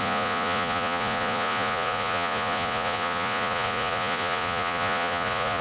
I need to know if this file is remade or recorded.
remade